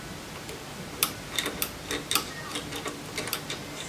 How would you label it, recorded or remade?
recorded